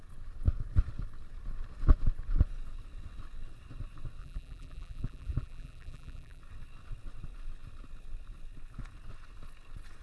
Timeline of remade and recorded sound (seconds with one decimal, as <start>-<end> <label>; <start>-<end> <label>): 0.0-4.2 recorded; 4.2-6.4 remade; 6.4-10.0 recorded